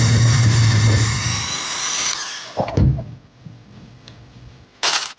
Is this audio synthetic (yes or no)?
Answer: no